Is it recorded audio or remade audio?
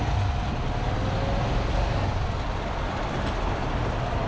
recorded